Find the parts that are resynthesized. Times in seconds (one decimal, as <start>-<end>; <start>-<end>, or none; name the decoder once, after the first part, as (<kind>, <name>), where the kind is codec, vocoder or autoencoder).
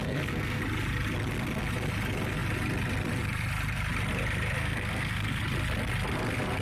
0.0-0.6 (codec, SNAC); 4.6-5.4